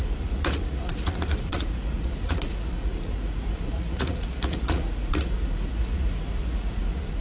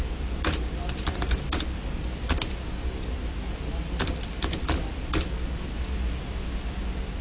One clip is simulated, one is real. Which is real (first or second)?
second